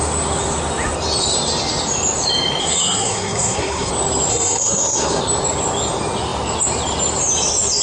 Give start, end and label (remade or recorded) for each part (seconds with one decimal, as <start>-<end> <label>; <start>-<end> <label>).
0.0-2.6 recorded; 2.6-3.9 remade; 3.9-4.3 recorded; 4.3-5.2 remade; 5.2-7.8 recorded